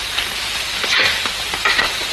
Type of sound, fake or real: fake